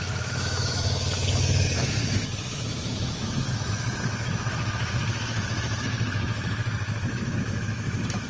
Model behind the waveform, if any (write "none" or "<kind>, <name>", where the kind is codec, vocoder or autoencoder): autoencoder, DAC-VAE